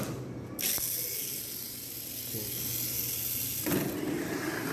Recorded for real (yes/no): yes